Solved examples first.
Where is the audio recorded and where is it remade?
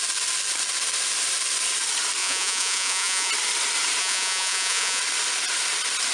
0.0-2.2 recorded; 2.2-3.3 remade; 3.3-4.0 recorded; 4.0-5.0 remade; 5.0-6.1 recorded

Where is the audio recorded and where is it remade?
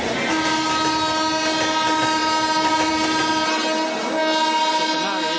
0.0-5.4 recorded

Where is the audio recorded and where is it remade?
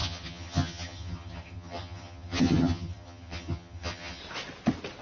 0.0-4.2 remade; 4.2-5.0 recorded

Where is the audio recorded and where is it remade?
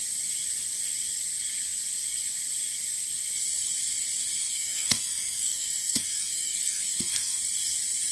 0.0-4.4 recorded; 4.4-7.4 remade; 7.4-8.1 recorded